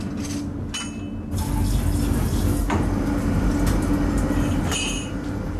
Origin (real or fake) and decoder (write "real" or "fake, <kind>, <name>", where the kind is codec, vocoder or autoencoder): real